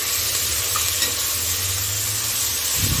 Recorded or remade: recorded